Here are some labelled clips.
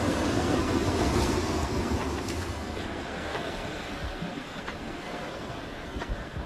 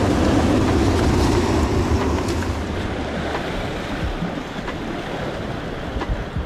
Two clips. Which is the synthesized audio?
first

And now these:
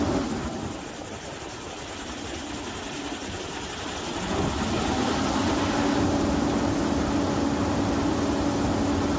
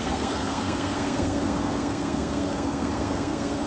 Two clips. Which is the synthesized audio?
second